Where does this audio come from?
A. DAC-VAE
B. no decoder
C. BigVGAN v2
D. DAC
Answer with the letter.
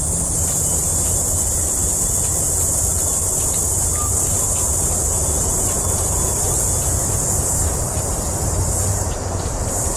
C